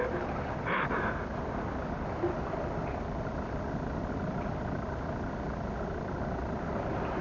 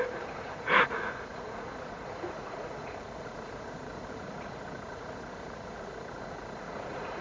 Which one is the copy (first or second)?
second